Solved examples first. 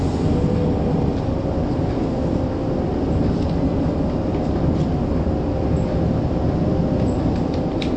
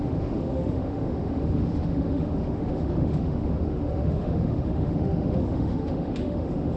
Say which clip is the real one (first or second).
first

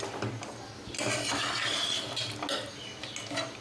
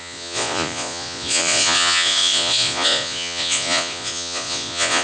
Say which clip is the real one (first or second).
first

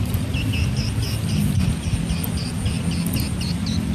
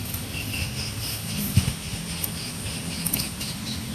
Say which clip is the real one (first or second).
first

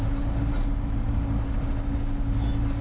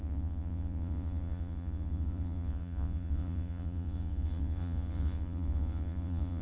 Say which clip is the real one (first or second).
first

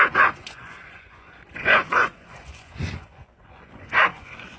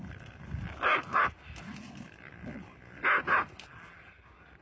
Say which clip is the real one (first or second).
second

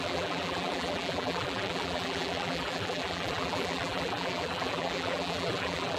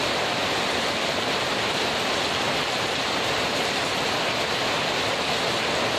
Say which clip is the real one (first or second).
second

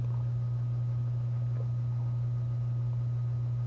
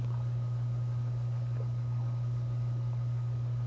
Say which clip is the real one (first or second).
first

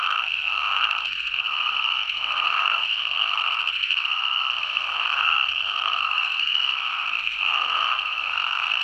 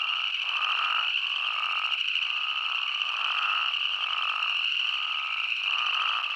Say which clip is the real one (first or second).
second